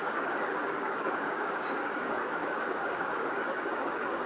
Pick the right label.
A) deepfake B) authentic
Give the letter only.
A